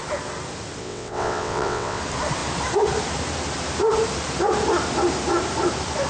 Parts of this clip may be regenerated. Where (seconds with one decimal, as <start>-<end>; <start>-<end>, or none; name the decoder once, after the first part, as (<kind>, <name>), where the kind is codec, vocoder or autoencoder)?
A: 0.8-2.0 (vocoder, WaveNeXt)